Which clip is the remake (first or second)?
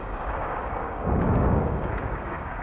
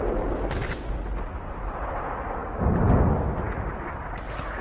first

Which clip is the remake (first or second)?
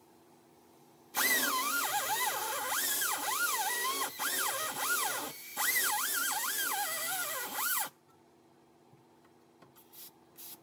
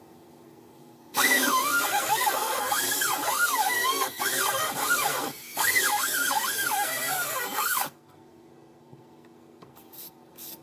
second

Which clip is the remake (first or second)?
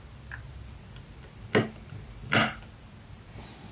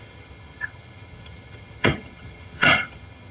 second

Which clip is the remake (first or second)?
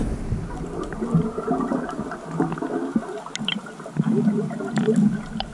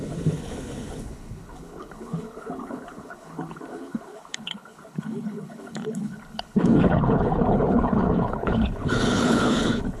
second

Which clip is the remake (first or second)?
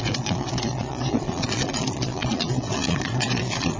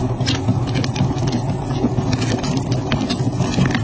first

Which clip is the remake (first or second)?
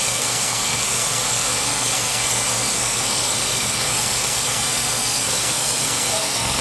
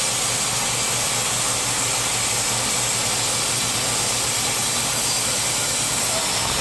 first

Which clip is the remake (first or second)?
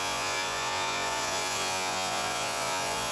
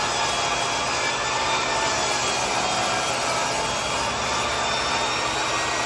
first